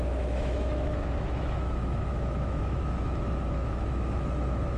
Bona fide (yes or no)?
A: no